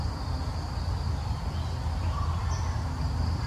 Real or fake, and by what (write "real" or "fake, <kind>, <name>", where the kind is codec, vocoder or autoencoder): real